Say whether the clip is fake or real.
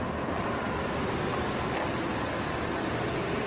real